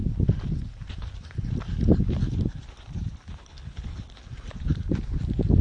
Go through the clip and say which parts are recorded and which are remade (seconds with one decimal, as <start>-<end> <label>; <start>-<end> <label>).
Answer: 0.0-3.4 recorded; 3.4-3.9 remade; 3.9-5.6 recorded